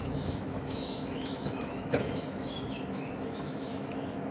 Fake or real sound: fake